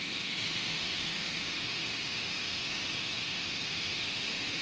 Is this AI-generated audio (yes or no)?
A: yes